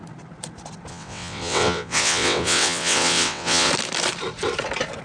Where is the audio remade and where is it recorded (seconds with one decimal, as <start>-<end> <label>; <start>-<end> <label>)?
0.0-0.9 recorded; 0.9-3.7 remade; 3.7-5.0 recorded

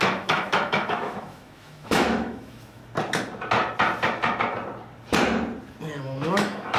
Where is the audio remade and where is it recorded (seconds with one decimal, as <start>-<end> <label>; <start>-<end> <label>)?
0.0-2.8 remade; 2.8-6.0 recorded; 6.0-6.8 remade

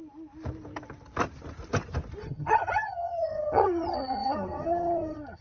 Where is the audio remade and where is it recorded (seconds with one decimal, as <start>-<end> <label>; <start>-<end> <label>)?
0.0-2.2 recorded; 2.2-5.4 remade

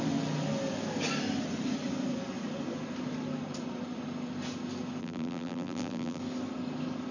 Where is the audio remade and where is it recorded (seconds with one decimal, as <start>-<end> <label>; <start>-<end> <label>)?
0.0-5.0 recorded; 5.0-6.2 remade; 6.2-7.1 recorded

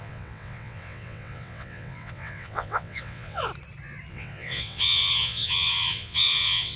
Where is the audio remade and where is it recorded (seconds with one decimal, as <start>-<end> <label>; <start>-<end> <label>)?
0.0-3.5 remade; 3.5-4.1 recorded; 4.1-6.8 remade